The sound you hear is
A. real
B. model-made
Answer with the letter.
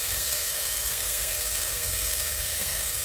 B